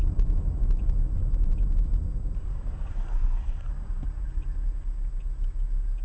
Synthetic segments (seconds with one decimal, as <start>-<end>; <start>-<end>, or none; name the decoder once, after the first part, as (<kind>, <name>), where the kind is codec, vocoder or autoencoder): 2.9-3.7 (codec, SNAC)